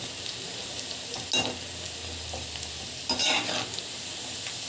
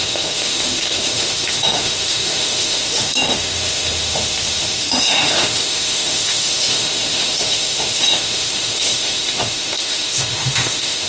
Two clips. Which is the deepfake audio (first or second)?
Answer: second